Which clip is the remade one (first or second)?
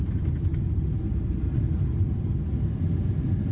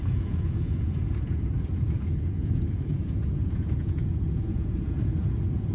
second